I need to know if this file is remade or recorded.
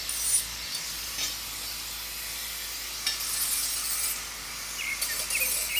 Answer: recorded